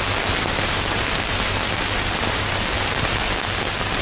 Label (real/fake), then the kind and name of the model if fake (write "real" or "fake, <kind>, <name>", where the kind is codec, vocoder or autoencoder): real